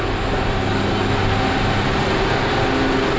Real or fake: real